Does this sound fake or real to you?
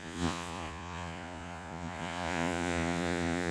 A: fake